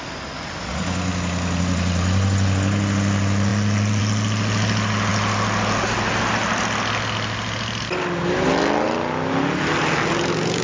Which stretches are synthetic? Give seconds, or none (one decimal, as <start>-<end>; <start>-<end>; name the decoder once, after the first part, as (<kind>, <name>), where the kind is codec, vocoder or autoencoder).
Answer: none

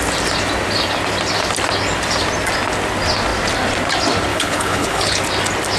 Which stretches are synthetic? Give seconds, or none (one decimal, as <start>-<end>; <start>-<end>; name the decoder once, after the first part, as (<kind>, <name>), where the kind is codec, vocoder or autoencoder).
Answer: 4.3-5.2 (codec, HILCodec)

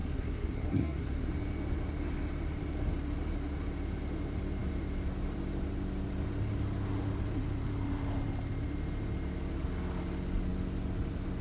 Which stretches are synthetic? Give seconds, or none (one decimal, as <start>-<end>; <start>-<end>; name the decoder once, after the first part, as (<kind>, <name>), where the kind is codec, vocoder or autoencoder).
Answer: 0.0-1.3 (codec, SNAC)

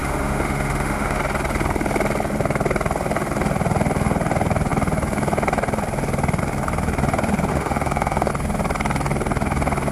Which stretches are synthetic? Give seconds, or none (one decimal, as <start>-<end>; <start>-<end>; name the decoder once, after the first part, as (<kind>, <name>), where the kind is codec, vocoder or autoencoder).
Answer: 0.0-1.2 (autoencoder, DAC-VAE); 7.5-8.3

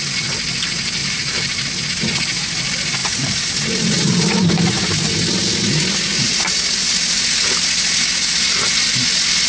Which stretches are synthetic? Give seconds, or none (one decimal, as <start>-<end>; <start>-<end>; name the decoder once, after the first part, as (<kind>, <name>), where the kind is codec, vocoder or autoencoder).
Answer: 1.0-1.7 (vocoder, BigVGAN v2)

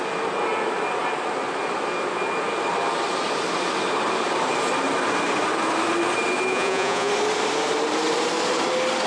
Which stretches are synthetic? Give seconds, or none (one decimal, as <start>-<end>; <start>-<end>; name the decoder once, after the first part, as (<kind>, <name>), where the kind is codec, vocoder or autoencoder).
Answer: 6.5-7.1 (vocoder, Vocos)

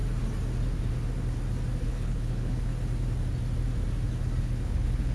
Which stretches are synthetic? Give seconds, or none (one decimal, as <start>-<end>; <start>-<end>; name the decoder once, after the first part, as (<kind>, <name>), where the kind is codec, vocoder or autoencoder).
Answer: 1.8-2.7 (codec, HILCodec); 4.4-5.1

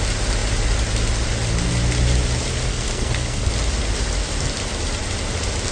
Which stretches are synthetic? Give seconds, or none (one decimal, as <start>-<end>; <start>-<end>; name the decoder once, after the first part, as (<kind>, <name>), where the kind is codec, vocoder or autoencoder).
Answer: 2.7-3.5 (codec, SNAC)